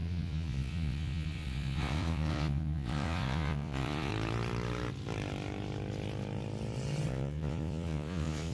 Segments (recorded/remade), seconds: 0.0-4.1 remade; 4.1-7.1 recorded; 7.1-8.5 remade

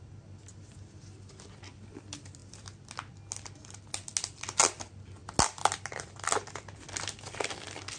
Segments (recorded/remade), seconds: 0.0-8.0 recorded

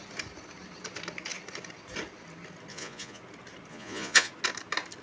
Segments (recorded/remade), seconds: 0.0-2.7 recorded; 2.7-3.2 remade; 3.2-3.7 recorded; 3.7-4.3 remade; 4.3-5.0 recorded

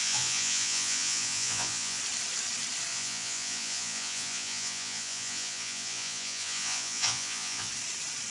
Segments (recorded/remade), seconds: 0.0-2.0 remade; 2.0-2.9 recorded; 2.9-7.7 remade; 7.7-8.3 recorded

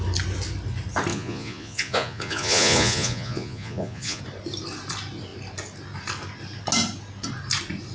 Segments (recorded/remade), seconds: 0.0-1.1 recorded; 1.1-4.2 remade; 4.2-7.9 recorded

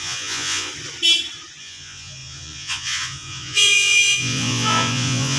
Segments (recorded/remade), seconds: 0.0-0.7 remade; 0.7-1.6 recorded; 1.6-5.4 remade